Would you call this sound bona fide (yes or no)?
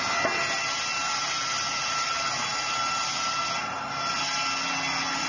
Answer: yes